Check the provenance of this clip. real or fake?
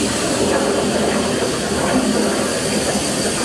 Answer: real